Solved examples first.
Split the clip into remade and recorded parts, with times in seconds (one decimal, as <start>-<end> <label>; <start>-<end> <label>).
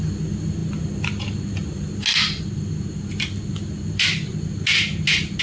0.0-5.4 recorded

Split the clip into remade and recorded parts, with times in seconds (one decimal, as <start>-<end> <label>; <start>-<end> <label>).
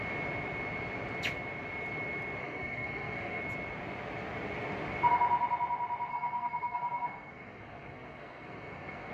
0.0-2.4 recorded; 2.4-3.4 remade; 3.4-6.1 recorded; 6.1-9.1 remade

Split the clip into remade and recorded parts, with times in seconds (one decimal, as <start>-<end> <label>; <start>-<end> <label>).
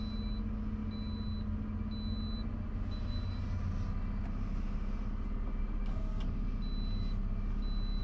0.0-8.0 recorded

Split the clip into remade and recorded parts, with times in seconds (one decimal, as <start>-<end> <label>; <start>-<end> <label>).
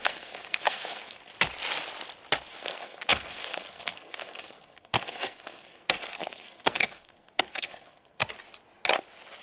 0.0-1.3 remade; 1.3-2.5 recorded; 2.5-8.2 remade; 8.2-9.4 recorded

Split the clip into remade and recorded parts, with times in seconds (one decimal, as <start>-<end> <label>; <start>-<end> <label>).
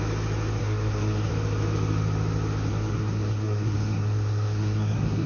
0.0-0.6 recorded; 0.6-1.3 remade; 1.3-2.7 recorded; 2.7-5.3 remade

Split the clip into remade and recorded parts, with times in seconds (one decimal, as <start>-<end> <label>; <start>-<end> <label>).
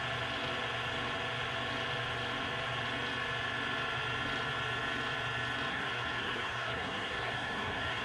0.0-5.7 recorded; 5.7-8.0 remade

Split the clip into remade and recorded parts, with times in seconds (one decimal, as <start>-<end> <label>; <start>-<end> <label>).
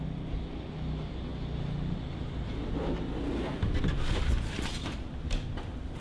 0.0-6.0 recorded